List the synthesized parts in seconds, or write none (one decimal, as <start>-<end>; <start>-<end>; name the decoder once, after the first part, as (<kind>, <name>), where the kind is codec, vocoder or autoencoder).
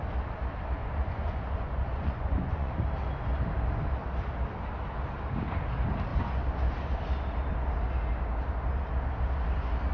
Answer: 0.8-2.8 (vocoder, Vocos)